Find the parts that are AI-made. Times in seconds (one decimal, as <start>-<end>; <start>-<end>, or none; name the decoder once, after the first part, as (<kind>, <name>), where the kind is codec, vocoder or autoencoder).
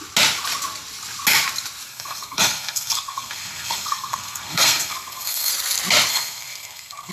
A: 1.9-5.5 (codec, SNAC); 6.1-7.1